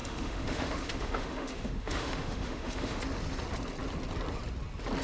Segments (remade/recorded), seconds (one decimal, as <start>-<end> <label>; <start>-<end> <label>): 0.0-3.0 remade; 3.0-5.0 recorded